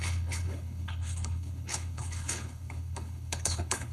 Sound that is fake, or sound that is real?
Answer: fake